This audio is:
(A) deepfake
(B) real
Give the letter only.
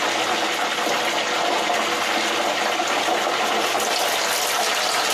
B